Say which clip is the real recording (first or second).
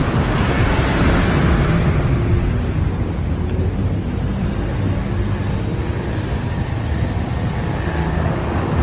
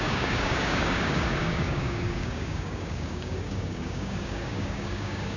first